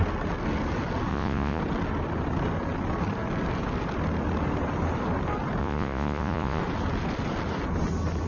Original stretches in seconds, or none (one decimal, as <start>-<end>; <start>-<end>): 0.0-1.1; 1.6-5.6; 6.6-8.3